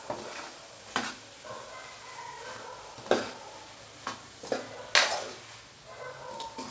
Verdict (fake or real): real